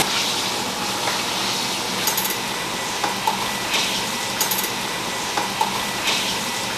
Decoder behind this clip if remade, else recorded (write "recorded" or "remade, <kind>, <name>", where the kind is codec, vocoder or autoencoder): recorded